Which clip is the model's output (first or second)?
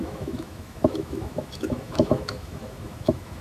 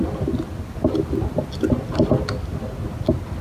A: first